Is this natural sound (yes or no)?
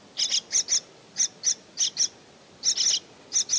yes